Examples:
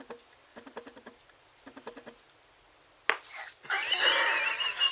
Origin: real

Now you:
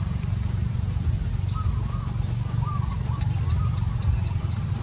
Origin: real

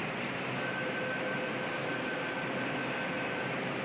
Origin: real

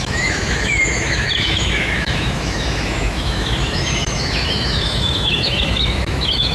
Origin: fake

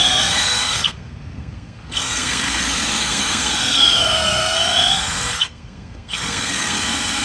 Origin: fake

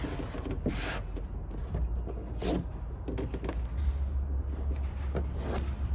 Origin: real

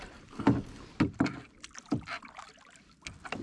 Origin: real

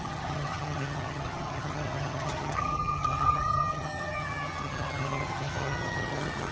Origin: fake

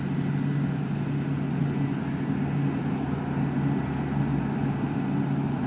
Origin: real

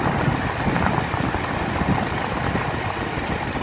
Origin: real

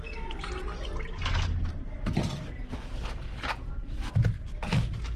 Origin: real